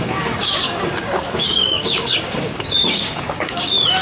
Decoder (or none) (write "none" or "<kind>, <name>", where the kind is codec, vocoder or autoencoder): codec, DAC